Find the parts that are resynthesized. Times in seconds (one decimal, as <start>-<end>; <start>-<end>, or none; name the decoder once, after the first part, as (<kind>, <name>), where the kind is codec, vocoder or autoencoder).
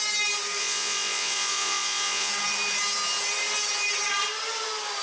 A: 0.6-2.3 (vocoder, Vocos)